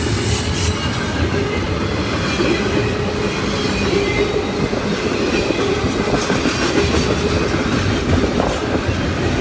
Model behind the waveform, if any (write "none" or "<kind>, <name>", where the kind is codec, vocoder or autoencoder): none